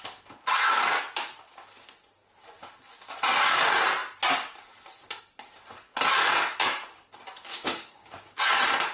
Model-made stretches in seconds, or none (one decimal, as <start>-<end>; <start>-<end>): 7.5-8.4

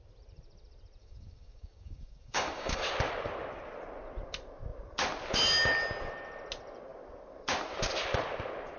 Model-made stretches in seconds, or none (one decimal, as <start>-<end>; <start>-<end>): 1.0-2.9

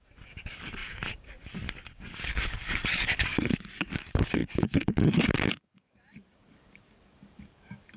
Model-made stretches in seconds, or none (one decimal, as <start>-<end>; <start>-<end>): 0.0-8.0

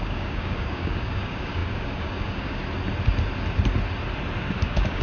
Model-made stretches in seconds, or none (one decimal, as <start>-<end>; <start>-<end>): 0.0-2.6; 4.4-5.0

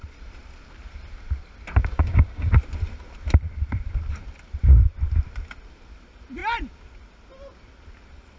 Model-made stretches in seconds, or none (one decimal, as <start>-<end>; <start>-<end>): 1.8-2.5

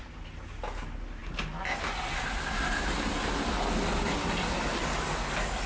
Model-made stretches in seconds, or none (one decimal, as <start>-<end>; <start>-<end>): none